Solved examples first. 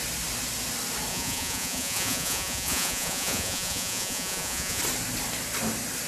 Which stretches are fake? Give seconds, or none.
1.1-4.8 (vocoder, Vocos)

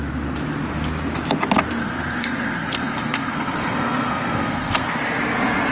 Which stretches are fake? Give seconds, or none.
1.8-5.0 (codec, SNAC)

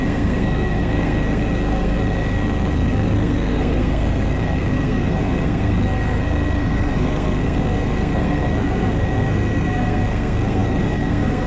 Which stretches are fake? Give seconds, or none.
0.0-11.5 (codec, SNAC)

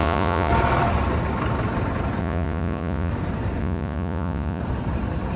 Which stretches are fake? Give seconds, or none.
0.0-0.5 (vocoder, Vocos); 2.2-3.1; 3.6-4.6

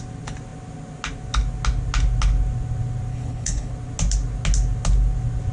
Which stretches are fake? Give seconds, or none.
3.1-3.7 (codec, HILCodec)

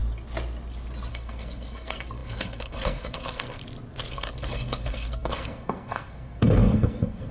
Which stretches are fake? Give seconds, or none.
1.1-3.6 (codec, SNAC); 4.1-7.3

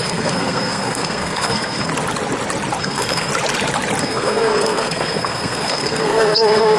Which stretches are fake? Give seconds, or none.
0.0-1.9 (codec, SNAC); 2.8-3.3; 4.0-6.8